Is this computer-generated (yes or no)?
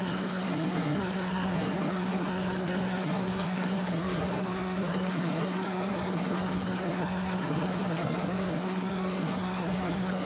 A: yes